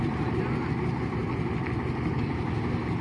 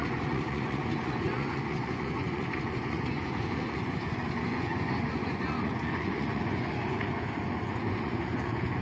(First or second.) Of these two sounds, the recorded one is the first